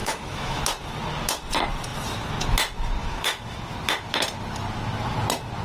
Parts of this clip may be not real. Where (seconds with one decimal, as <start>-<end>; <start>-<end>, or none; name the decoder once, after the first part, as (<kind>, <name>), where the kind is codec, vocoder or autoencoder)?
0.0-0.6 (autoencoder, DAC-VAE); 3.0-3.7